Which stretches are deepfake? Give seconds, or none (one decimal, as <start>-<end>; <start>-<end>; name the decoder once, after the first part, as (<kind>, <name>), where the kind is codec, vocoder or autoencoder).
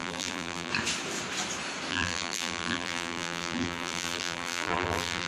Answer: 0.0-0.7 (vocoder, BigVGAN v2); 1.9-5.3